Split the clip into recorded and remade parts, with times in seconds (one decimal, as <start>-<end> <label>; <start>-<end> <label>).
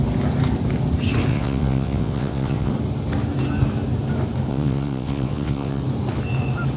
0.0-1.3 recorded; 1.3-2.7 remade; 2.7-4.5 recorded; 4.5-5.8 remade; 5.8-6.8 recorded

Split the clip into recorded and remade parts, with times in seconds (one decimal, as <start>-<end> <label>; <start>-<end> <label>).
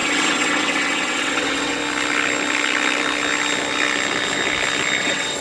0.0-1.8 remade; 1.8-5.0 recorded; 5.0-5.4 remade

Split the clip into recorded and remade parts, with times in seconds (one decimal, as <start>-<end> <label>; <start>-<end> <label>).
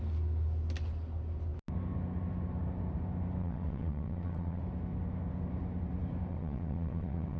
0.0-3.4 recorded; 3.4-4.6 remade; 4.6-6.3 recorded; 6.3-7.4 remade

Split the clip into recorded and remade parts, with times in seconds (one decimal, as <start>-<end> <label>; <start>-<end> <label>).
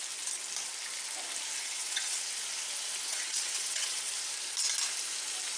0.0-1.6 recorded; 1.6-2.3 remade; 2.3-3.1 recorded; 3.1-4.1 remade; 4.1-5.6 recorded